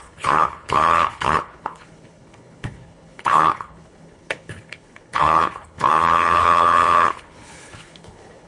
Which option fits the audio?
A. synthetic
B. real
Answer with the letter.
A